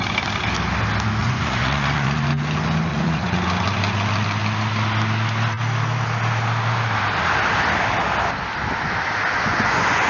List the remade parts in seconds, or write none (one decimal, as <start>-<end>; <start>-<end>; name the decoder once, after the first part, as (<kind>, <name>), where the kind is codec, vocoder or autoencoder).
1.2-2.2 (vocoder, Vocos); 2.9-3.4; 9.3-10.1